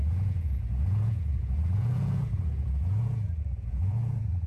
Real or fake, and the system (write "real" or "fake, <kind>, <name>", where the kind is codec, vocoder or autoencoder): fake, vocoder, Vocos